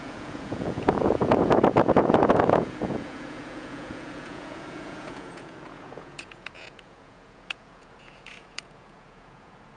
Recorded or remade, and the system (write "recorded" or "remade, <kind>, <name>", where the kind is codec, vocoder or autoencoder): remade, vocoder, Vocos